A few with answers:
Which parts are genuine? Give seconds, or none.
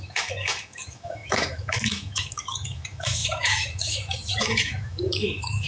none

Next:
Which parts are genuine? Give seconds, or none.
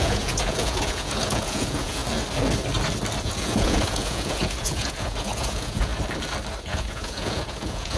2.0-3.2; 5.9-6.6